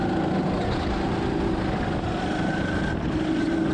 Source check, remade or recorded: recorded